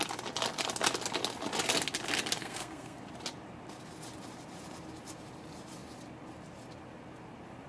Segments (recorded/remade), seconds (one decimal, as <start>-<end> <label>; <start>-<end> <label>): 0.0-2.4 recorded; 2.4-3.0 remade; 3.0-7.7 recorded